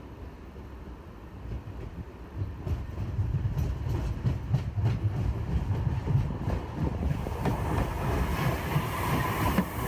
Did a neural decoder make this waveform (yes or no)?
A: no